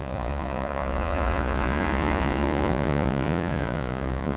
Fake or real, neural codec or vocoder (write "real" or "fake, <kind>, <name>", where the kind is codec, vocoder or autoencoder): fake, vocoder, Vocos